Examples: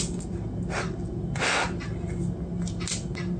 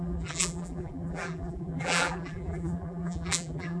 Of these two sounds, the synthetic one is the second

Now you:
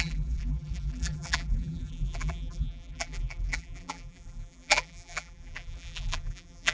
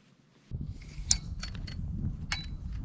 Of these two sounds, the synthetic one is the first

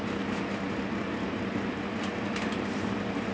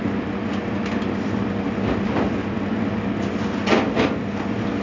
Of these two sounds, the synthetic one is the first